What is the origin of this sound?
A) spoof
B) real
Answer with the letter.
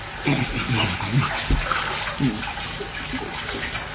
B